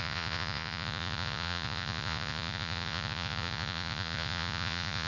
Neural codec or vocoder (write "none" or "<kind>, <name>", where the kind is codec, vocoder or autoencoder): vocoder, Vocos